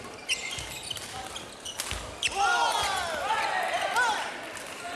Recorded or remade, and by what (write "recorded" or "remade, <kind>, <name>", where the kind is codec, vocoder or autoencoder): recorded